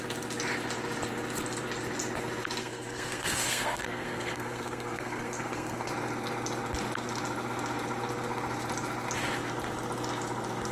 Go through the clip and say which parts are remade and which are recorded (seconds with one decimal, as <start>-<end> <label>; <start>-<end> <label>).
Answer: 0.0-2.6 recorded; 2.6-5.9 remade; 5.9-10.7 recorded